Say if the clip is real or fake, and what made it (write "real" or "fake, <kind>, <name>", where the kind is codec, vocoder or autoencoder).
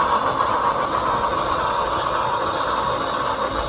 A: real